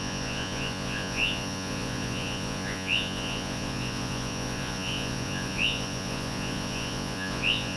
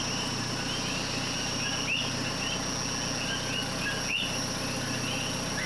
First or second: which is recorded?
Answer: second